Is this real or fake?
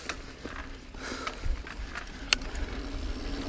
real